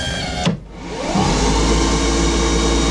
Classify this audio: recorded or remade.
recorded